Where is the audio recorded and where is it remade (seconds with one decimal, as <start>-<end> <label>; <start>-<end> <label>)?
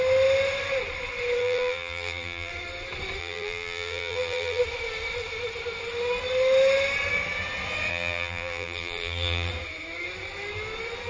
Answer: 0.0-1.4 recorded; 1.4-2.5 remade; 2.5-3.2 recorded; 3.2-4.6 remade; 4.6-7.9 recorded; 7.9-9.5 remade; 9.5-11.1 recorded